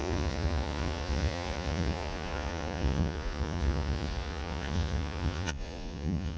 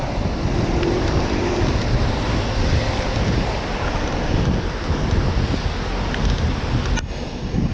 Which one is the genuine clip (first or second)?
second